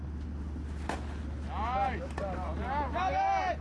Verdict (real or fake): real